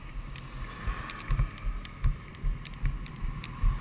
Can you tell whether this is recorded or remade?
recorded